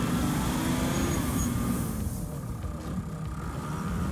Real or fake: real